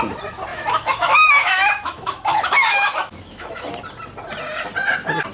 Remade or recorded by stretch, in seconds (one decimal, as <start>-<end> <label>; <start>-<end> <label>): 0.0-0.5 recorded; 0.5-3.7 remade; 3.7-5.3 recorded